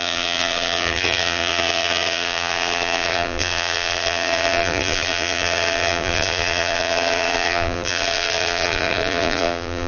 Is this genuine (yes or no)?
no